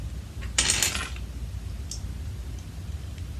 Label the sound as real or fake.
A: real